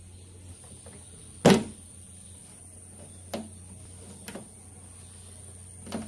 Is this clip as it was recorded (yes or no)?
yes